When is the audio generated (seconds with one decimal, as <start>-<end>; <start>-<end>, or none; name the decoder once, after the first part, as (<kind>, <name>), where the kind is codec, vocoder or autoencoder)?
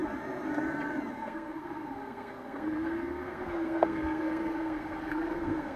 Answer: 1.1-5.8 (codec, SNAC)